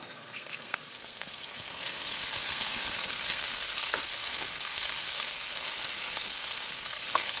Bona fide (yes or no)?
no